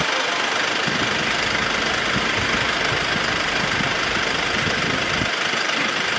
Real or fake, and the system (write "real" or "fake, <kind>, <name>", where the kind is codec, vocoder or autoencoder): real